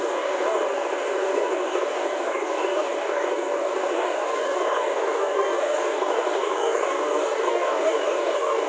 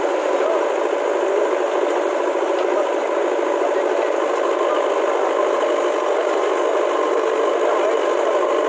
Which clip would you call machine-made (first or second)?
first